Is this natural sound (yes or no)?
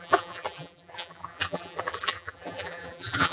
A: no